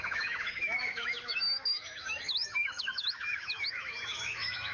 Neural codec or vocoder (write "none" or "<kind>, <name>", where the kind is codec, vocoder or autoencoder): autoencoder, DAC-VAE